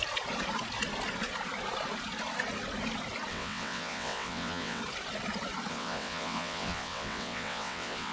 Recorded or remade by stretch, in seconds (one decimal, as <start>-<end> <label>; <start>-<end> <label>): 0.0-3.3 recorded; 3.3-4.8 remade; 4.8-5.7 recorded; 5.7-8.1 remade

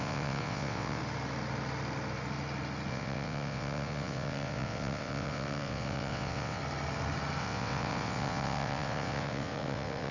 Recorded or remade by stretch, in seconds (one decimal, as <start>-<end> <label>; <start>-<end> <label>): 0.0-1.0 remade; 1.0-2.9 recorded; 2.9-6.6 remade; 6.6-7.4 recorded; 7.4-10.1 remade

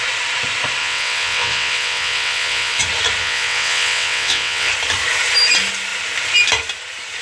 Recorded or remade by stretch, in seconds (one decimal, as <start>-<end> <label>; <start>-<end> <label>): 0.0-0.8 recorded; 0.8-2.8 remade; 2.8-3.2 recorded; 3.2-4.7 remade; 4.7-7.2 recorded

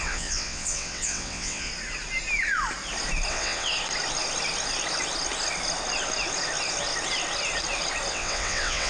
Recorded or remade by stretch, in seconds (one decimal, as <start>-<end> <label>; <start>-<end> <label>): 0.0-1.7 remade; 1.7-3.3 recorded; 3.3-3.7 remade; 3.7-8.1 recorded; 8.1-8.9 remade

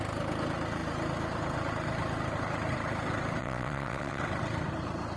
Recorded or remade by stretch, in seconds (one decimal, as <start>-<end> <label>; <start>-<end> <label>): 0.0-3.4 recorded; 3.4-4.2 remade; 4.2-5.2 recorded

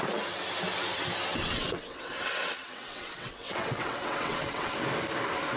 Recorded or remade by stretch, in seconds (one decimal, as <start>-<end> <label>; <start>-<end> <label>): 0.0-1.3 recorded; 1.3-4.7 remade; 4.7-5.6 recorded

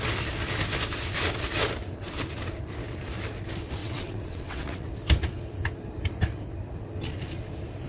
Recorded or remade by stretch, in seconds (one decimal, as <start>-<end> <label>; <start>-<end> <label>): 0.0-3.8 recorded; 3.8-4.9 remade; 4.9-7.9 recorded

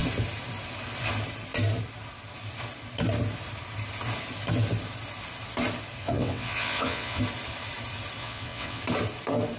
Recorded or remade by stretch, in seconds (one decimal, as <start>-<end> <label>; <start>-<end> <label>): 0.0-6.0 recorded; 6.0-7.2 remade; 7.2-8.2 recorded; 8.2-8.8 remade; 8.8-9.6 recorded